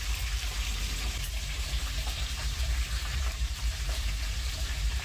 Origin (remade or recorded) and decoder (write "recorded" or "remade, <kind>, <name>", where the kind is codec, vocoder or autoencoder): remade, vocoder, BigVGAN v2